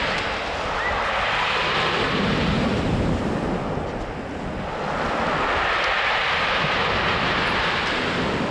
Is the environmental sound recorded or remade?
recorded